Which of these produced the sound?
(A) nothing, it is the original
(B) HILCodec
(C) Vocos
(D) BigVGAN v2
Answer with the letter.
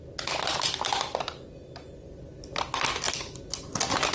A